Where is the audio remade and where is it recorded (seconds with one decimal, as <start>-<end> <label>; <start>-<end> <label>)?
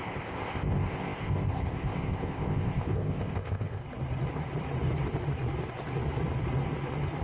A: 0.0-3.8 remade; 3.8-7.2 recorded